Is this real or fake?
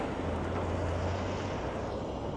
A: real